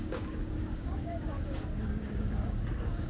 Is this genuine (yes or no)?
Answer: no